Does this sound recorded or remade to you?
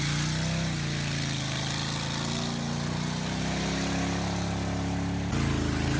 recorded